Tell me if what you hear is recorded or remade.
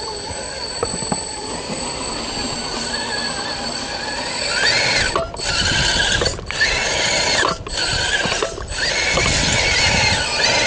recorded